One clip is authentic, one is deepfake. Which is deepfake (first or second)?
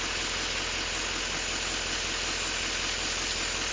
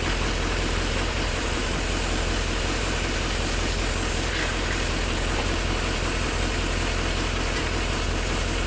second